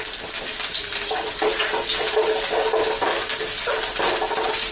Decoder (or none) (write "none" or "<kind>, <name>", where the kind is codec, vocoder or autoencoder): none